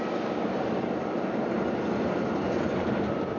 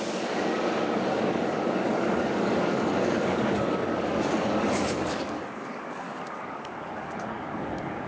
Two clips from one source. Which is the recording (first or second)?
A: first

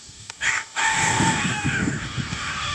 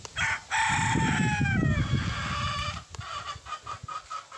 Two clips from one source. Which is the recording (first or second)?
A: second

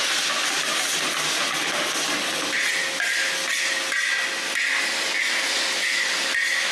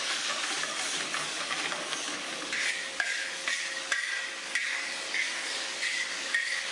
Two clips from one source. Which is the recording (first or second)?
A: first